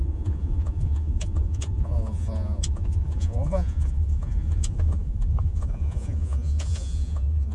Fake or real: fake